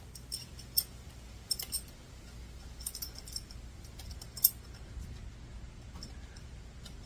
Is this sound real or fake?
real